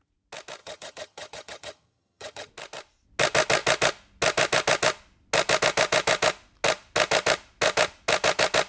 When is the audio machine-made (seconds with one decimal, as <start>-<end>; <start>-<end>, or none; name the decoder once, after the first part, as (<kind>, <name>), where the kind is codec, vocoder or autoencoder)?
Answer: 0.6-2.5 (vocoder, HiFi-GAN)